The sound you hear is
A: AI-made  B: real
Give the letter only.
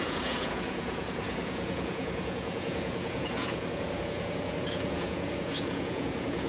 A